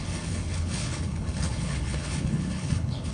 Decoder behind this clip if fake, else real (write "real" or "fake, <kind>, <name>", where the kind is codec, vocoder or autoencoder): fake, codec, HILCodec